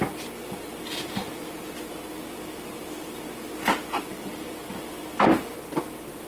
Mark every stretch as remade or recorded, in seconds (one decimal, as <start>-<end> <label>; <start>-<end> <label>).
0.0-6.3 recorded